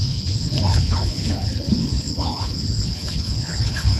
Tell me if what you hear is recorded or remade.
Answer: remade